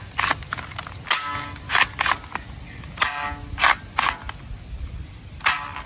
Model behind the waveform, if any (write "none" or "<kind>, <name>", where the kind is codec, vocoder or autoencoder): none